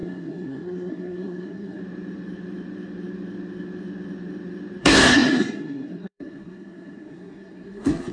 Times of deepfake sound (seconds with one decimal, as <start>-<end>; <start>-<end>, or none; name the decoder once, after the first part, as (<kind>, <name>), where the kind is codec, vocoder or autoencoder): 0.0-1.8 (codec, SNAC); 4.8-8.1